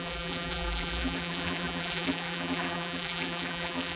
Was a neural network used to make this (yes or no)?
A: yes